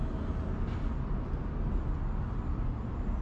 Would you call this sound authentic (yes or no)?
yes